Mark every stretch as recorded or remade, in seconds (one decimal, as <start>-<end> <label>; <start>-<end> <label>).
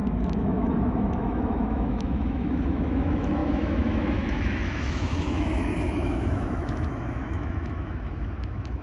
0.0-8.8 remade